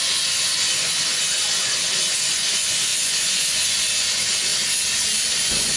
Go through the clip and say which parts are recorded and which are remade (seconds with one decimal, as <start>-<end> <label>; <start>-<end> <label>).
0.0-4.5 remade; 4.5-5.3 recorded; 5.3-5.8 remade